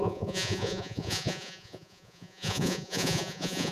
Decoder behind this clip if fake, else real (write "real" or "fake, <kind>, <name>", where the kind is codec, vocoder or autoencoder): fake, vocoder, Vocos